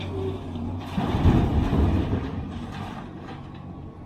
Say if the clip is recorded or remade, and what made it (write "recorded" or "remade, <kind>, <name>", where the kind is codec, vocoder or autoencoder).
recorded